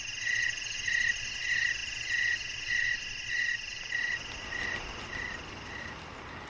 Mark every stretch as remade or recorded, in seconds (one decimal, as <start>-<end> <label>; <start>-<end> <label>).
0.0-6.5 recorded